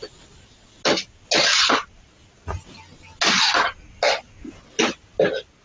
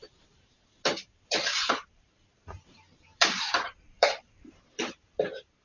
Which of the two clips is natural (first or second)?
first